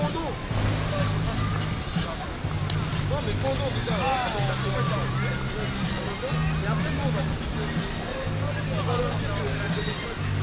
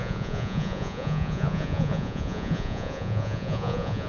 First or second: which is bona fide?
first